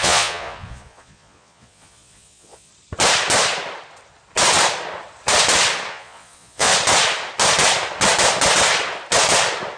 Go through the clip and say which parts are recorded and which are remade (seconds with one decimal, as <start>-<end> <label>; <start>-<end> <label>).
0.0-2.7 remade; 2.7-5.9 recorded; 5.9-6.7 remade; 6.7-9.8 recorded